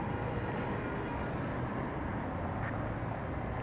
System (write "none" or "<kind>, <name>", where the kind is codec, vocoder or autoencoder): none